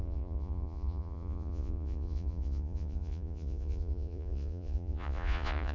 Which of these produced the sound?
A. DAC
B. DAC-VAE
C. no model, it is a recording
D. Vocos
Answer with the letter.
D